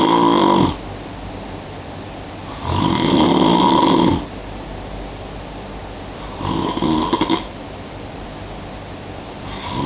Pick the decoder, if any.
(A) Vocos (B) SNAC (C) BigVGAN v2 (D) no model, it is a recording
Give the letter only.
D